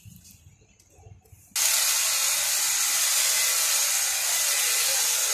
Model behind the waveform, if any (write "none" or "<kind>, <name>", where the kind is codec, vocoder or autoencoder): none